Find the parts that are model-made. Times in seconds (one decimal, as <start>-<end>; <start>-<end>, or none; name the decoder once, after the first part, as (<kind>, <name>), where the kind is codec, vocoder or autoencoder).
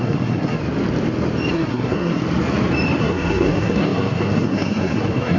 0.0-0.6 (codec, SNAC); 1.5-2.2; 3.0-5.4